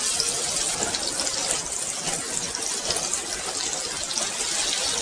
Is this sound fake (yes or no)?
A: no